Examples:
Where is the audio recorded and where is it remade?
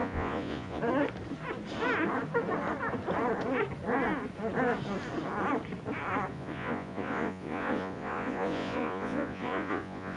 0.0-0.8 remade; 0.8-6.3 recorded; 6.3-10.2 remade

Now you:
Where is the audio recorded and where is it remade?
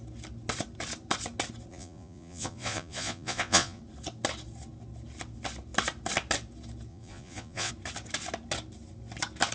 0.0-1.7 recorded; 1.7-3.8 remade; 3.8-6.9 recorded; 6.9-7.7 remade; 7.7-9.5 recorded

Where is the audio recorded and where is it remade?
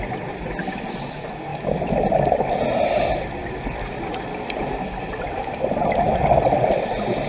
0.0-7.3 recorded